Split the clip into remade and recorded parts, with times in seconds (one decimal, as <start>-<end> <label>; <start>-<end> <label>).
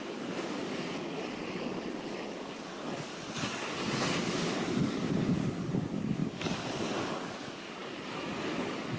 0.0-3.1 remade; 3.1-4.2 recorded; 4.2-9.0 remade